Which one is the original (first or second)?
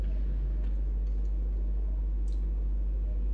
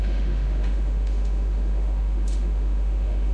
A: first